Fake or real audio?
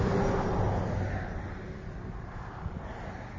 real